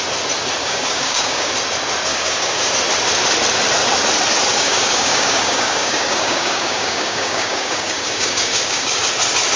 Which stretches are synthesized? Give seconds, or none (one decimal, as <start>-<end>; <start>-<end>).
0.6-1.5; 2.1-2.7; 4.5-9.0